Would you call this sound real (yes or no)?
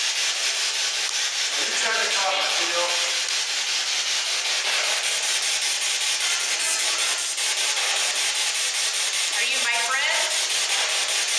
yes